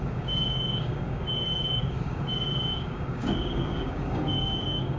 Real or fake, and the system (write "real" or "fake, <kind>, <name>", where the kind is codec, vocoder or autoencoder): fake, codec, DAC